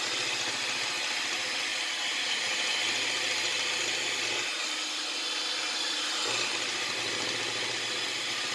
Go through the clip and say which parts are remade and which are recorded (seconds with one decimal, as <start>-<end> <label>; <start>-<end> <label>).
0.0-8.5 recorded